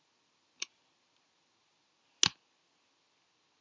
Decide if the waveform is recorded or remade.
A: recorded